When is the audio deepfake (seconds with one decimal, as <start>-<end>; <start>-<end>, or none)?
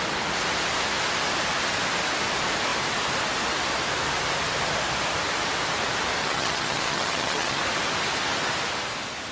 6.2-7.6